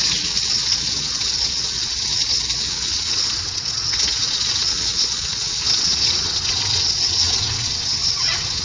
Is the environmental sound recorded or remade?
remade